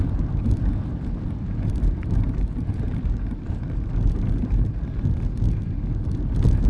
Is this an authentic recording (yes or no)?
yes